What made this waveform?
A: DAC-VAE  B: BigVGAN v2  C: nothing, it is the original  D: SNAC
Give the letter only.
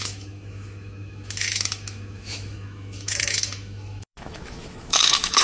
A